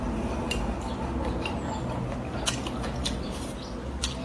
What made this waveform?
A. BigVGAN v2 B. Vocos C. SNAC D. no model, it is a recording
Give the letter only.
D